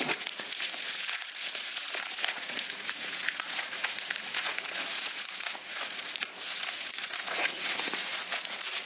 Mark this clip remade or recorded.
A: remade